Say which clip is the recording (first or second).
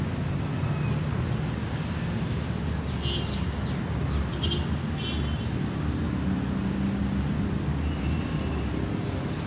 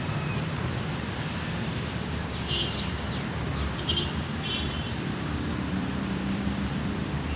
first